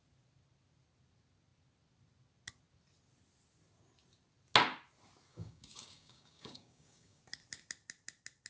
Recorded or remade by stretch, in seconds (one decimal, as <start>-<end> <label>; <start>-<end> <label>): 0.0-5.3 recorded; 5.3-7.2 remade; 7.2-8.5 recorded